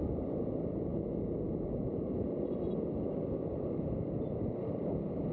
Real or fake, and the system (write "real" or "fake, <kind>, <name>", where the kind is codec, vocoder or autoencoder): real